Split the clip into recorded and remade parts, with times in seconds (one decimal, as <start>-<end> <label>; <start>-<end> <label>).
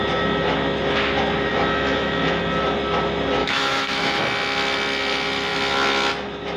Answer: 0.0-1.5 recorded; 1.5-2.4 remade; 2.4-3.4 recorded; 3.4-4.2 remade; 4.2-6.6 recorded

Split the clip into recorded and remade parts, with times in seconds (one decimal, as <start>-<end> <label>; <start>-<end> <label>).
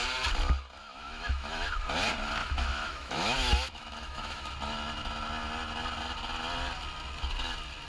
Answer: 0.0-0.8 recorded; 0.8-1.7 remade; 1.7-2.4 recorded; 2.4-4.5 remade; 4.5-7.9 recorded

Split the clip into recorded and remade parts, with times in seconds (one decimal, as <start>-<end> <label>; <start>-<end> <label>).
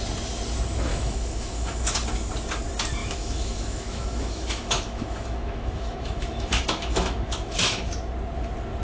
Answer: 0.0-0.9 recorded; 0.9-1.9 remade; 1.9-3.0 recorded; 3.0-7.9 remade; 7.9-8.8 recorded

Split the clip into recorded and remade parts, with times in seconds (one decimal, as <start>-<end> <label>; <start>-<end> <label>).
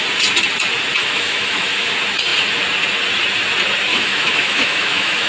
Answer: 0.0-1.0 recorded; 1.0-1.9 remade; 1.9-3.9 recorded; 3.9-5.3 remade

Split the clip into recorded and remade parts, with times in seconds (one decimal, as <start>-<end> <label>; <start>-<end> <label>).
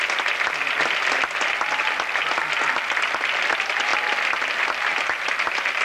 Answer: 0.0-5.8 recorded